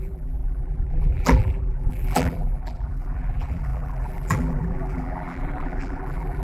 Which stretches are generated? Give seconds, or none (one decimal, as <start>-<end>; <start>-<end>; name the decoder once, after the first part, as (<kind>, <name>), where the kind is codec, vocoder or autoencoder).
0.0-6.4 (vocoder, BigVGAN v2)